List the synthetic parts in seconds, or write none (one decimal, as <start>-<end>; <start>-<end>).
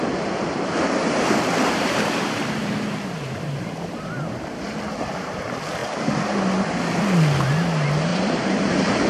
1.0-4.5; 8.1-8.7